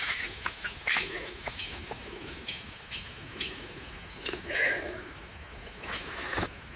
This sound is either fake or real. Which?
fake